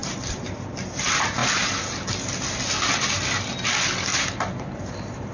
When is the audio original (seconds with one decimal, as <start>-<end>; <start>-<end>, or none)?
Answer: 0.7-4.1